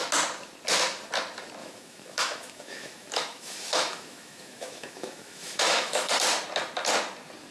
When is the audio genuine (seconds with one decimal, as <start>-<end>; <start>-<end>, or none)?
0.0-1.6; 6.1-7.5